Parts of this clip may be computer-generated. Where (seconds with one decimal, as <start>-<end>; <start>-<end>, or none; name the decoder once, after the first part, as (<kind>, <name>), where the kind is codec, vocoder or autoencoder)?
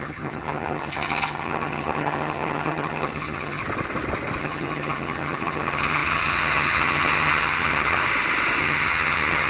0.0-3.6 (vocoder, HiFi-GAN); 4.4-8.0; 8.6-9.5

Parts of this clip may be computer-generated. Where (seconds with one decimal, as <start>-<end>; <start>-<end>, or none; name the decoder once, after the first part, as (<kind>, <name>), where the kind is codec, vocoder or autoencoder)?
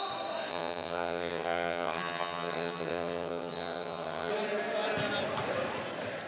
0.5-4.3 (vocoder, HiFi-GAN)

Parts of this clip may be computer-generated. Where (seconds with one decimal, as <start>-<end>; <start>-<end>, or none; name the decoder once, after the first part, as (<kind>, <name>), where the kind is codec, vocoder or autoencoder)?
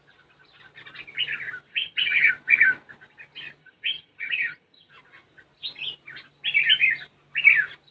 1.7-2.3 (vocoder, HiFi-GAN); 3.6-4.9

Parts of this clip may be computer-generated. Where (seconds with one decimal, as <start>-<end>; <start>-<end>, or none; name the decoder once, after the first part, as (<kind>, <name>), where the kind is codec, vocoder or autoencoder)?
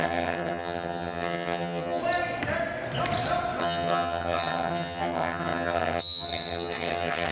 0.0-2.0 (vocoder, HiFi-GAN); 3.6-7.3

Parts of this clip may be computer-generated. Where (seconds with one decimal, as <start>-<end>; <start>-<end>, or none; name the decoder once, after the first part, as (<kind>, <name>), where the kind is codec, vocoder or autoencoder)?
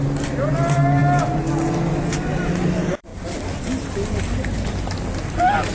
none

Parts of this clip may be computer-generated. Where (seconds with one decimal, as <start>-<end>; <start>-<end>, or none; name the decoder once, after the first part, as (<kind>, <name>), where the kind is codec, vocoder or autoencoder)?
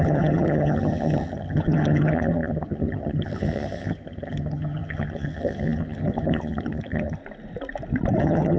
0.0-7.2 (vocoder, HiFi-GAN); 8.2-8.6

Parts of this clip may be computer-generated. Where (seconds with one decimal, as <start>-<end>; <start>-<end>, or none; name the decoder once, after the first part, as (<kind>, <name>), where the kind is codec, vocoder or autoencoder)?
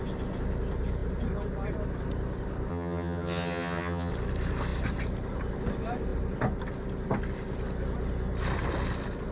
2.7-4.1 (vocoder, HiFi-GAN)